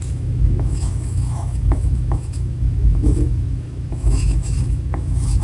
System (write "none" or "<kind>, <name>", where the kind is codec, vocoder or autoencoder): autoencoder, DAC-VAE